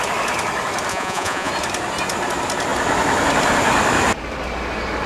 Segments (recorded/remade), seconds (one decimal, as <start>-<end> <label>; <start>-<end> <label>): 0.0-0.9 recorded; 0.9-1.5 remade; 1.5-5.1 recorded